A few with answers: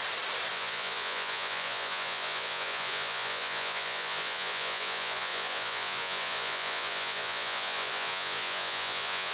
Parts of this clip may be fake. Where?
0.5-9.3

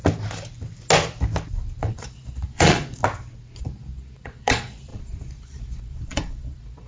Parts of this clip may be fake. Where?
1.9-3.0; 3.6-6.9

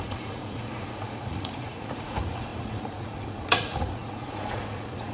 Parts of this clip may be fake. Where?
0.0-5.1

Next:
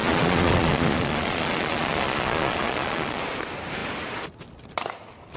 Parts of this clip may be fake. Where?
0.0-3.2

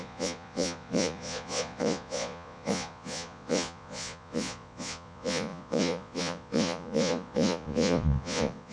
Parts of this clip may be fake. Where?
0.0-8.7

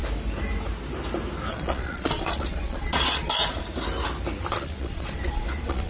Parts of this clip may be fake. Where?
1.5-3.6; 4.5-5.9

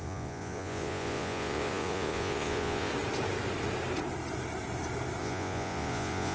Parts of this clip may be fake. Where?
0.0-2.9; 5.2-6.3

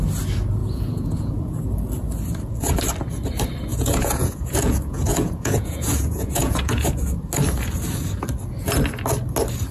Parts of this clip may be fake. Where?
0.6-1.6; 3.7-7.0